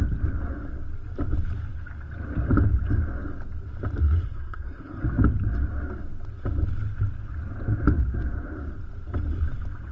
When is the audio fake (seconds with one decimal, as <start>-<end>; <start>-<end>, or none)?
4.0-5.0